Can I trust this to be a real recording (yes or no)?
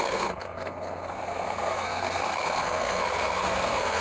no